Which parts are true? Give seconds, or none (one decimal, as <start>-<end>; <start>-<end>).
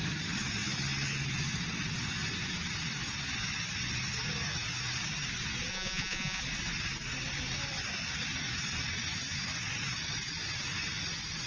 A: 0.0-5.7; 6.4-11.5